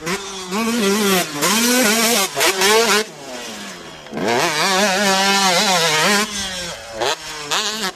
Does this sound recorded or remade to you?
recorded